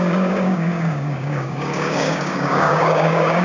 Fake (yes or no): yes